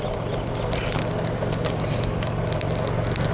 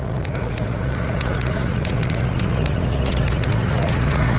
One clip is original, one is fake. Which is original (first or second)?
first